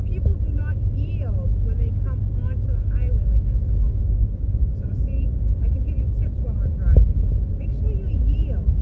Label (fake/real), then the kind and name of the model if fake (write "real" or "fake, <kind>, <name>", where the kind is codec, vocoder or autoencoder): real